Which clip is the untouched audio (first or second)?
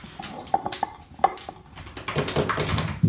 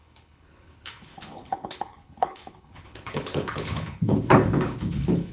first